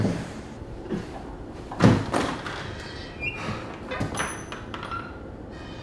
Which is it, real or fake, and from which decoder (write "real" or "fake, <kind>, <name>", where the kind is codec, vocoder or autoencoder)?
real